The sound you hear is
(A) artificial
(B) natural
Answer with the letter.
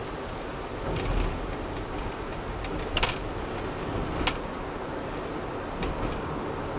B